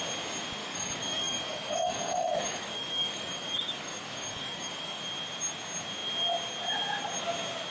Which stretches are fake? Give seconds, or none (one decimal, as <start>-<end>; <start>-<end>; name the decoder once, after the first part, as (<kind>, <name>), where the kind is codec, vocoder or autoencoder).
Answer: 0.6-5.0 (codec, DAC)